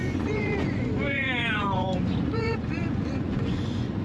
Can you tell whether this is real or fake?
fake